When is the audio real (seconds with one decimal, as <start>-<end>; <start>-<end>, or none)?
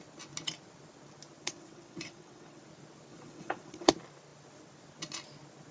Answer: 0.0-1.4; 2.6-3.1; 3.9-5.7